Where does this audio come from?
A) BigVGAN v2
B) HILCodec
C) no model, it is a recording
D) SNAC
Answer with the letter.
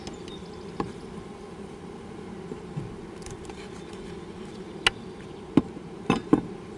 C